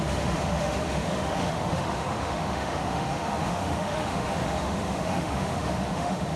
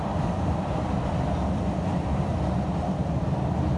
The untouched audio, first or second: second